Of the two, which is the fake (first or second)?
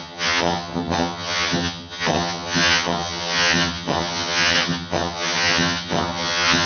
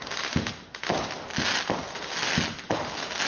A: first